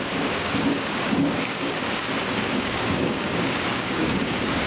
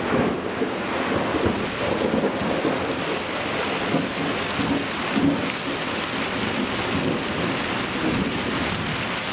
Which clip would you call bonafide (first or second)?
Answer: second